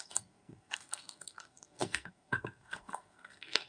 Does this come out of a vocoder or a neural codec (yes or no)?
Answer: yes